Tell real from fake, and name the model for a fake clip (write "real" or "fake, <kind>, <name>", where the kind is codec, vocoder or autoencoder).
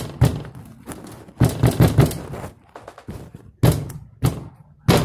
real